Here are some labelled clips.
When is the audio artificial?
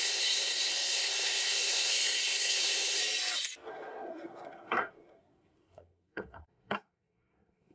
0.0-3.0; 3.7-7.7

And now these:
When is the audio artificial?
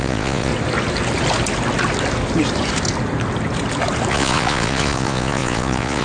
0.0-0.5; 4.1-6.0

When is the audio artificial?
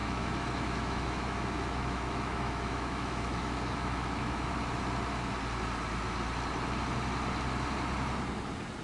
0.0-4.5